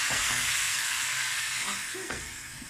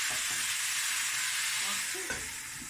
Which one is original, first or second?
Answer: second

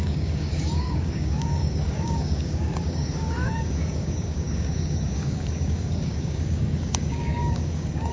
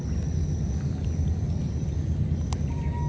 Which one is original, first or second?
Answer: second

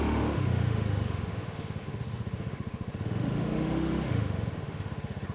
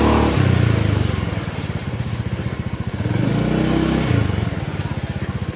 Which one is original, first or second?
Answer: second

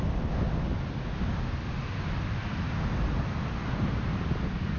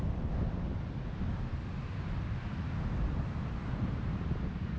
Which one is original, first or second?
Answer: first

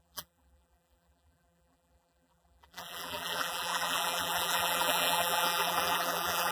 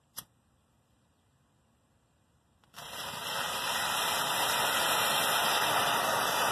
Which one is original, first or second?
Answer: second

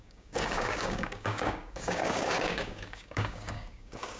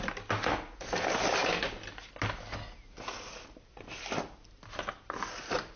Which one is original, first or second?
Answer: second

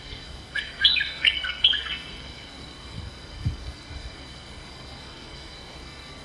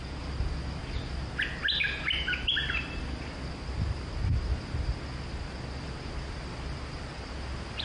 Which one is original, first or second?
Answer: second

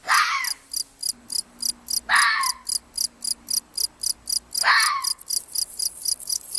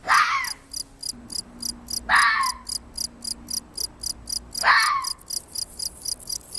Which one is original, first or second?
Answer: second